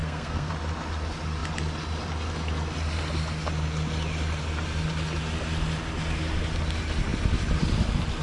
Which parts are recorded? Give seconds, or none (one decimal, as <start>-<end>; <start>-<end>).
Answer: 0.5-8.2